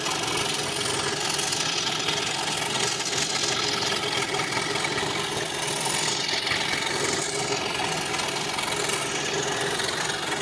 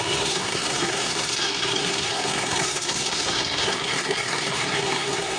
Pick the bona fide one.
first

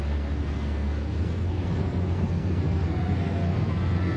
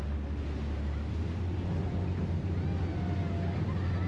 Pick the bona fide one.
second